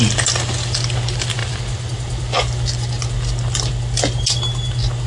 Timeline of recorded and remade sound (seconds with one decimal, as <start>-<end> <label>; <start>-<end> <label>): 0.0-5.1 recorded